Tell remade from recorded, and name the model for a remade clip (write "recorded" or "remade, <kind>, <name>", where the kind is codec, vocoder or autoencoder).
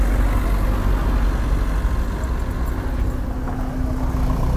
recorded